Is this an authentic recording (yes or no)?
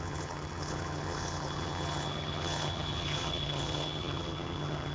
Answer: no